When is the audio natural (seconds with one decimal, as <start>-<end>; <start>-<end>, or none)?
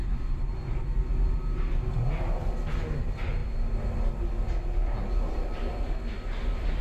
0.0-6.8